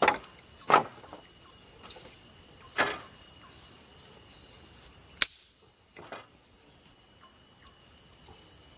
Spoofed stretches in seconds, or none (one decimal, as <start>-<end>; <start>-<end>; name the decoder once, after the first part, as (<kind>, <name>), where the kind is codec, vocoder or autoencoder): none